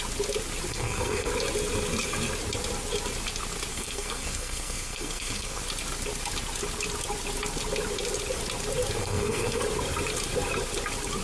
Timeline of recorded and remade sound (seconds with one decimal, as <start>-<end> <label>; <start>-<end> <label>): 0.0-0.7 recorded; 0.7-1.3 remade; 1.3-3.7 recorded; 3.7-5.6 remade; 5.6-9.0 recorded; 9.0-9.6 remade; 9.6-11.2 recorded

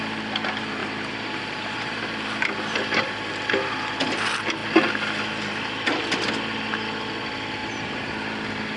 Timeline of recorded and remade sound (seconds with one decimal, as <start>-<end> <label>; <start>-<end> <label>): 0.0-0.8 recorded; 0.8-3.3 remade; 3.3-7.6 recorded; 7.6-8.1 remade; 8.1-8.8 recorded